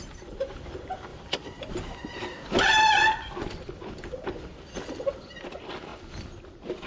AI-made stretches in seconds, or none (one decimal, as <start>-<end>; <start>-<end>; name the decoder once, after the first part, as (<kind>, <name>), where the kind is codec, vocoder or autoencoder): 1.1-1.7 (vocoder, BigVGAN v2)